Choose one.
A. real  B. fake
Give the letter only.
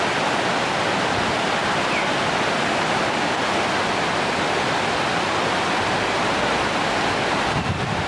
A